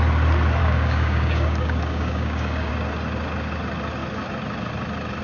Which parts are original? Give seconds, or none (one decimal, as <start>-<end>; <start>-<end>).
0.0-0.6; 2.7-5.2